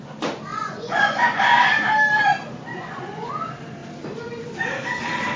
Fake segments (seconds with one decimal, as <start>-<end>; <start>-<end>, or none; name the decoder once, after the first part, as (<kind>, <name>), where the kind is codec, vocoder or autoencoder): 0.5-1.4 (vocoder, Vocos); 2.7-3.3